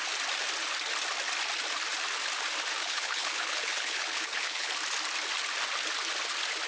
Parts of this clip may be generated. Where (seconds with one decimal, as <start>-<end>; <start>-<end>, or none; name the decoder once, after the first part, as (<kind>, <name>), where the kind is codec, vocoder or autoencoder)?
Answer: 2.8-4.7 (codec, HILCodec)

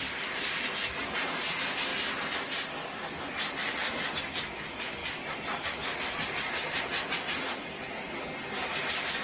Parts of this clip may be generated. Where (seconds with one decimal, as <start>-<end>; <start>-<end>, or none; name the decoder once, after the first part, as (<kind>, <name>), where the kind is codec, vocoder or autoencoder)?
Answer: none

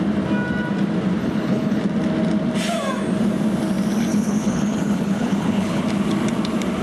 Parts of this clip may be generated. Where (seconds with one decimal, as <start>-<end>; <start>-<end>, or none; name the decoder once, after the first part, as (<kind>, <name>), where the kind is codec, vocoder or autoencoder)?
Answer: 1.2-1.8 (codec, HILCodec); 4.1-5.8

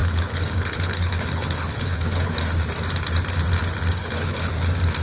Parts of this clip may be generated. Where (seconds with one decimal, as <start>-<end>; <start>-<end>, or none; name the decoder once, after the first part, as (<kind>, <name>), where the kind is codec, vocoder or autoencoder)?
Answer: 0.0-2.3 (codec, HILCodec); 4.0-4.5

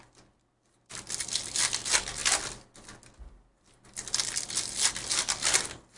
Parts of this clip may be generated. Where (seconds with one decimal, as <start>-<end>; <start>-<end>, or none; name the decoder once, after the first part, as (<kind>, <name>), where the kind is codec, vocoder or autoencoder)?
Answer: none

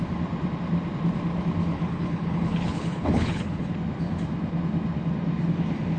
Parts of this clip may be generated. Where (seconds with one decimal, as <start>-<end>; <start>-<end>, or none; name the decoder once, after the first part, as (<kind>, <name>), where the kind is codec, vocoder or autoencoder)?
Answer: 1.7-3.7 (codec, HILCodec)

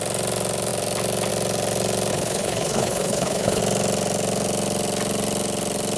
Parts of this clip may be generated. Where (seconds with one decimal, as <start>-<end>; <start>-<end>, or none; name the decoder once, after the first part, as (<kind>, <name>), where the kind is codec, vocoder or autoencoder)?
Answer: 2.1-3.6 (codec, HILCodec)